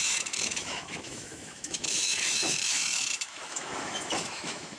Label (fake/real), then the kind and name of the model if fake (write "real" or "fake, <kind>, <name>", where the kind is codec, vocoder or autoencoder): fake, autoencoder, DAC-VAE